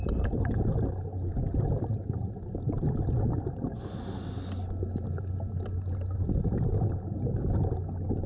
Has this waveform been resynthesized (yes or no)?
no